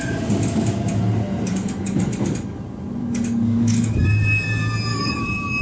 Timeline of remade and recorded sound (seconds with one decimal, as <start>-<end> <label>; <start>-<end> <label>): 0.0-1.5 recorded; 1.5-2.6 remade; 2.6-3.0 recorded; 3.0-4.0 remade; 4.0-4.9 recorded; 4.9-5.6 remade